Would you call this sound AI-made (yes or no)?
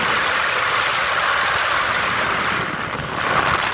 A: no